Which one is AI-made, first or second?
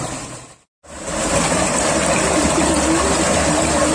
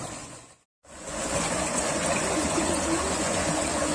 second